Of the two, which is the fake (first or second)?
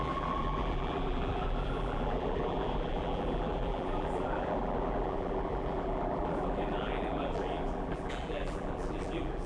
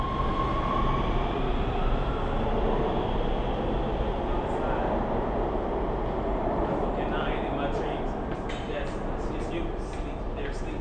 first